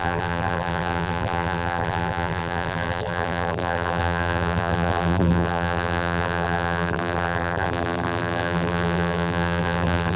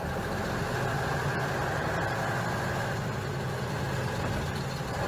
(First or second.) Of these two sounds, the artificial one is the first